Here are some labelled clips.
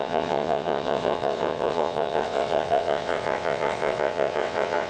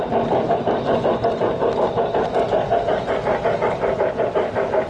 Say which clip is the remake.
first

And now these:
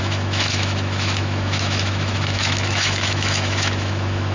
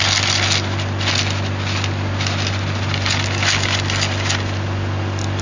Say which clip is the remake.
first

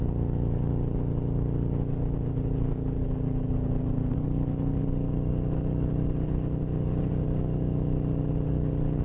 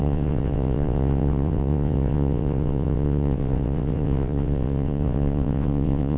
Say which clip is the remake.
second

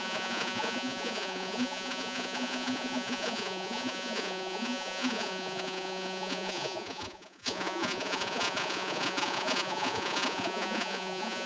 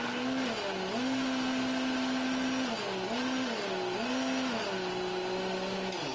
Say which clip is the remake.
first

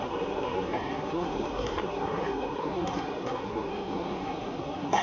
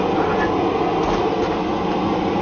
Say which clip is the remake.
first